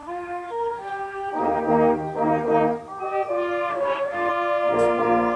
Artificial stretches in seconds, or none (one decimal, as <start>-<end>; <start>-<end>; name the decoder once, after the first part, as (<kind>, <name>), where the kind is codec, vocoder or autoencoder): 0.0-1.3 (autoencoder, DAC-VAE); 3.7-4.3